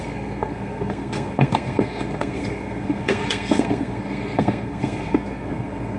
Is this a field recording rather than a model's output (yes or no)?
no